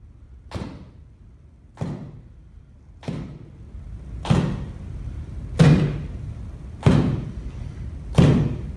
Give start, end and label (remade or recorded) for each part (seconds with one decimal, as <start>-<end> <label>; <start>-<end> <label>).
0.0-3.0 recorded; 3.0-3.7 remade; 3.7-8.8 recorded